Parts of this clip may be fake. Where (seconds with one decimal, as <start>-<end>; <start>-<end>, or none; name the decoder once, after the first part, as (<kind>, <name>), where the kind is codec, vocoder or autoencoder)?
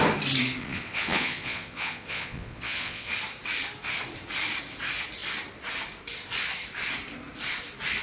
0.6-3.1 (vocoder, Vocos)